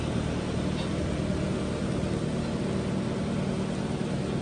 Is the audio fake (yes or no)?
no